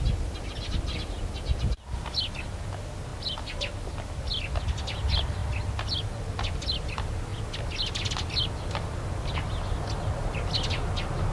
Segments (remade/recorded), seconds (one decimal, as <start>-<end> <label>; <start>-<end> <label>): 0.0-11.3 recorded

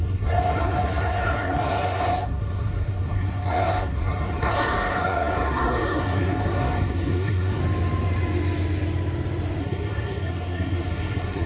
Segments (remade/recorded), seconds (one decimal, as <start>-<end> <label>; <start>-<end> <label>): 0.0-7.6 remade; 7.6-9.6 recorded; 9.6-11.5 remade